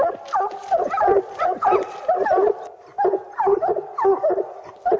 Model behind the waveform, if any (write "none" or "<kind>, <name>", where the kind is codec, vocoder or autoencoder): none